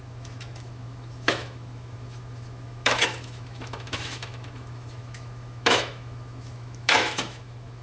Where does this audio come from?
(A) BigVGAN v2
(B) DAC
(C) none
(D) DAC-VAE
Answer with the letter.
D